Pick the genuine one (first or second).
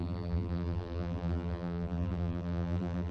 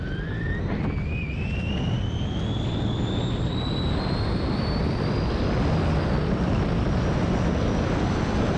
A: second